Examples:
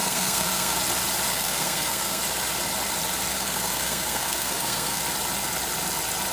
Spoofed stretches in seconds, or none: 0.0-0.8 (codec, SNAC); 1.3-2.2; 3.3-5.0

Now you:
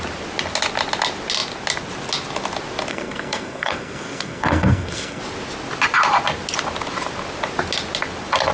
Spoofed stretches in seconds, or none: 2.9-5.2 (codec, SNAC)

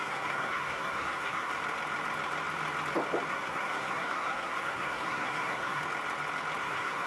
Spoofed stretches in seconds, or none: 0.0-1.5 (codec, SNAC); 3.3-5.8; 6.6-7.1